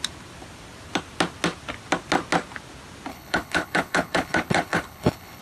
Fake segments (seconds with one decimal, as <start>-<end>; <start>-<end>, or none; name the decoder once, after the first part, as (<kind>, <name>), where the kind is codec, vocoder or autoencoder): 3.1-5.4 (codec, HILCodec)